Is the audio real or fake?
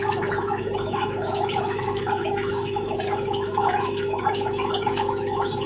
fake